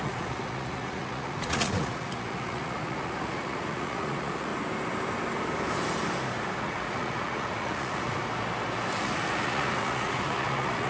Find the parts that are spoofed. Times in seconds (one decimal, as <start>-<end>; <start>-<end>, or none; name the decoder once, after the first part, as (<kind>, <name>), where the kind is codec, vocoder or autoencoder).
0.0-4.5 (vocoder, Vocos); 6.6-8.2; 9.0-10.9